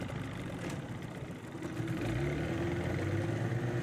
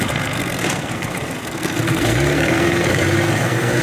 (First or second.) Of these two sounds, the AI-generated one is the second